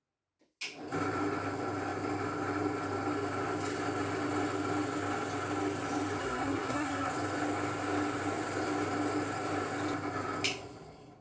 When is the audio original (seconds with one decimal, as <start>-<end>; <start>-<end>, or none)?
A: 0.0-6.2; 7.1-11.2